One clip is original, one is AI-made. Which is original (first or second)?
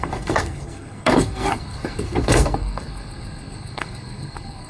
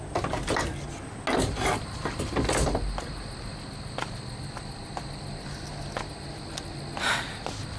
second